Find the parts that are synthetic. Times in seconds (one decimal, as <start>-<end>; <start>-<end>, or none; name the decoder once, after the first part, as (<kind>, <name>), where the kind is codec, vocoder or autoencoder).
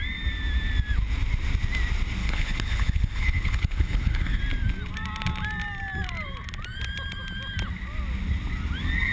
2.2-4.4 (codec, HILCodec)